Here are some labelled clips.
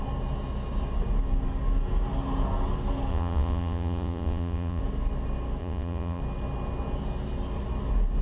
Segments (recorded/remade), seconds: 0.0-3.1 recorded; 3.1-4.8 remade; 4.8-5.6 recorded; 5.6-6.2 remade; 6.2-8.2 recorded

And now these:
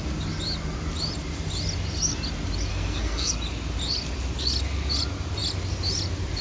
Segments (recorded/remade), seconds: 0.0-2.7 recorded; 2.7-3.3 remade; 3.3-6.4 recorded

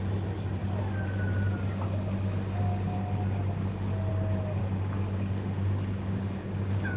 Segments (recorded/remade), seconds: 0.0-4.6 recorded; 4.6-7.0 remade

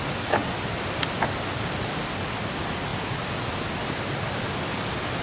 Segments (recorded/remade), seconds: 0.0-5.2 recorded

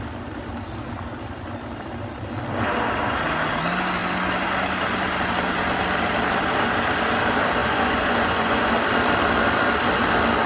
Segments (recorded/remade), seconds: 0.0-7.6 recorded; 7.6-8.7 remade; 8.7-10.5 recorded

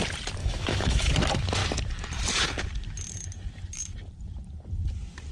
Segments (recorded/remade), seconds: 0.0-0.4 recorded; 0.4-1.1 remade; 1.1-5.3 recorded

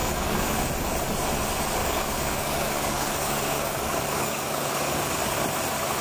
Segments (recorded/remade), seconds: 0.0-0.7 remade; 0.7-1.8 recorded; 1.8-5.4 remade; 5.4-6.0 recorded